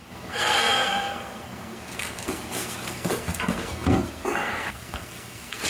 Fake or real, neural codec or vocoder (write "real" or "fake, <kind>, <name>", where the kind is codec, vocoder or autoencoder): fake, codec, SNAC